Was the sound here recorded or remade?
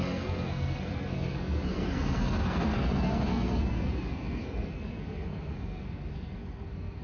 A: remade